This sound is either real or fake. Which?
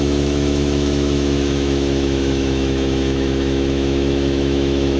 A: fake